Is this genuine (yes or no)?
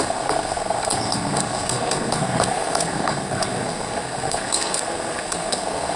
no